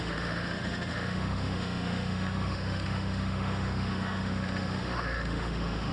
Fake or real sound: fake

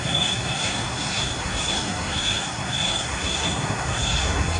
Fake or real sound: fake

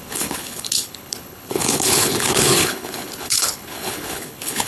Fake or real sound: fake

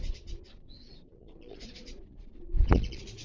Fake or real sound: fake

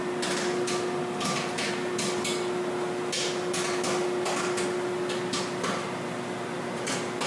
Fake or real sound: real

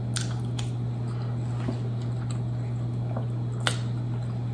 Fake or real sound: real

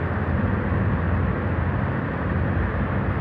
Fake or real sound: real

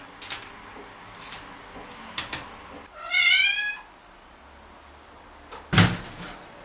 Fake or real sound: real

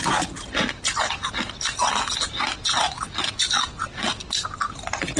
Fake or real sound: real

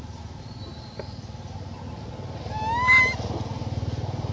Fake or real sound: real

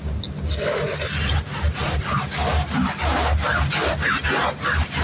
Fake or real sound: real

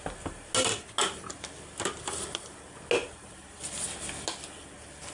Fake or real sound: real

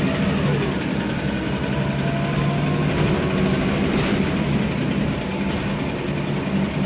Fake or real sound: real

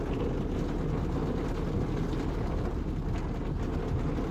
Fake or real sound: real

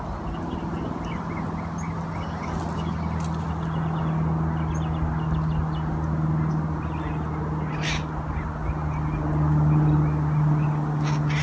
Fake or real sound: real